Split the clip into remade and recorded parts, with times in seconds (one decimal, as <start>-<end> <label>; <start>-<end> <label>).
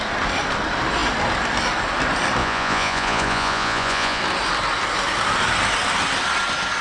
0.0-2.4 recorded; 2.4-4.2 remade; 4.2-6.8 recorded